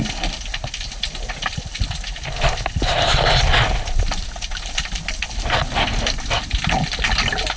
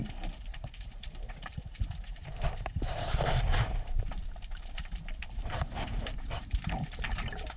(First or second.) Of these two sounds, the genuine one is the first